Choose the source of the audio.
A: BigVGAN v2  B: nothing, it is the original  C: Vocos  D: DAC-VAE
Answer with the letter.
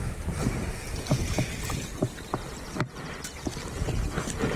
B